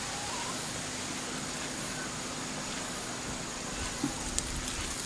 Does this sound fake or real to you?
real